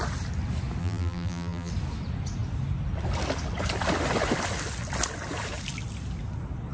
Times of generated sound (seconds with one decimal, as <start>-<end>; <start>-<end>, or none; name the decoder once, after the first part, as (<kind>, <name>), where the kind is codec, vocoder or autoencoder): 0.8-1.7 (vocoder, BigVGAN v2)